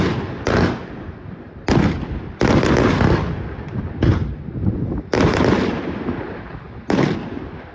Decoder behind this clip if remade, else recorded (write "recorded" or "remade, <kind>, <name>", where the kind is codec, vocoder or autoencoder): recorded